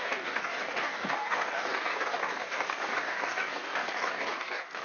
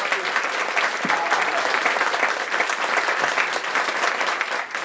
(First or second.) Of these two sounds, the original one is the second